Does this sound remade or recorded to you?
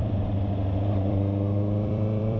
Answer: remade